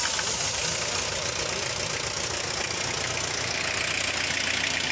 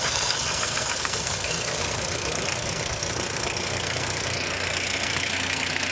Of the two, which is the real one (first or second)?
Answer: first